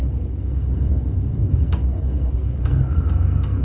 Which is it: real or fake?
fake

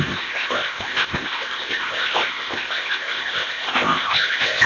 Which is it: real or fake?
fake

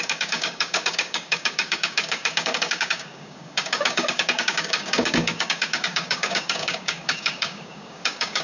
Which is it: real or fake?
fake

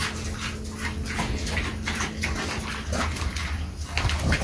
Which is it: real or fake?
real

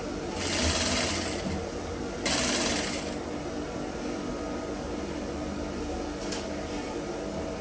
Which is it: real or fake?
real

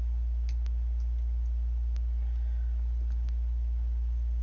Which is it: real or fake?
real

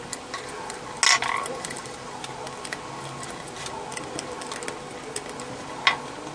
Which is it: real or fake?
real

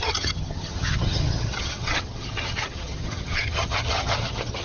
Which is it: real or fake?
fake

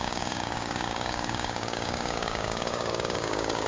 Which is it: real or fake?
fake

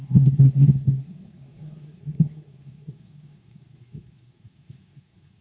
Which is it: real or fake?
fake